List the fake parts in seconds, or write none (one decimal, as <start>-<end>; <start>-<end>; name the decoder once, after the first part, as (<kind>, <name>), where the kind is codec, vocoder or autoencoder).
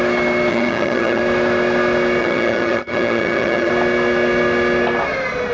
0.5-1.2 (vocoder, HiFi-GAN); 2.2-3.7